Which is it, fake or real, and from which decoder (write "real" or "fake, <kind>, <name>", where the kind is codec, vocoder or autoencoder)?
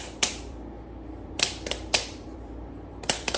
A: fake, vocoder, BigVGAN v2